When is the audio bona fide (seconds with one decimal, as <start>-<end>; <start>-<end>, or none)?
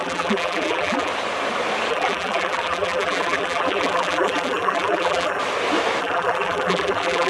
1.1-1.9; 5.4-6.0